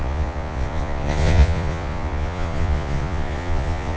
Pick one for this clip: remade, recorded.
remade